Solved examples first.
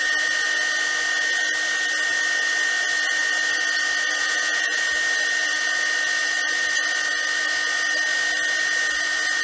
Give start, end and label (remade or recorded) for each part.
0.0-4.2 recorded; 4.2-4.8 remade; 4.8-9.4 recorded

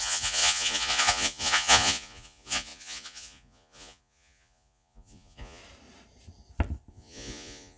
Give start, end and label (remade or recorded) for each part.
0.0-5.6 remade; 5.6-6.9 recorded; 6.9-7.8 remade

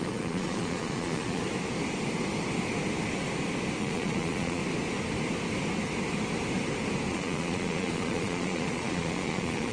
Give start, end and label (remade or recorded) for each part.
0.0-1.4 remade; 1.4-3.8 recorded; 3.8-4.6 remade; 4.6-7.1 recorded; 7.1-9.7 remade

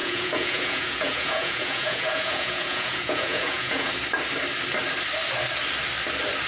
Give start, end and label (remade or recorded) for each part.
0.0-3.9 remade; 3.9-6.5 recorded

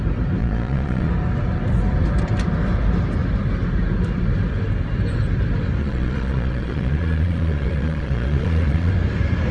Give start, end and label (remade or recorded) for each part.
0.0-0.4 recorded; 0.4-1.1 remade; 1.1-5.8 recorded; 5.8-8.9 remade; 8.9-9.5 recorded

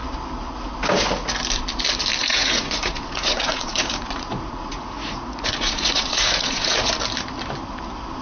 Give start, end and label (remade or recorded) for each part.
0.0-2.2 recorded; 2.2-6.9 remade; 6.9-8.2 recorded

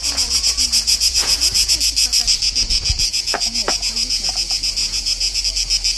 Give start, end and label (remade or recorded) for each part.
0.0-1.7 remade; 1.7-3.1 recorded; 3.1-4.3 remade; 4.3-4.8 recorded; 4.8-5.4 remade; 5.4-6.0 recorded

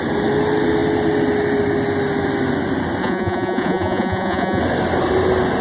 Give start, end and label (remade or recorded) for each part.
0.0-3.0 recorded; 3.0-4.6 remade; 4.6-5.6 recorded